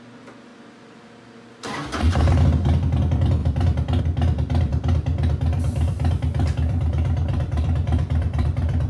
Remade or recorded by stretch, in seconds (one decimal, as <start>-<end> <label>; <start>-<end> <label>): 0.0-4.7 recorded; 4.7-8.9 remade